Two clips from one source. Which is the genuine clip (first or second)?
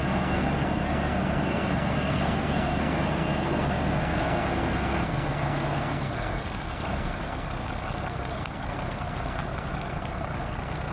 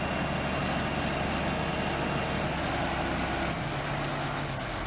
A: second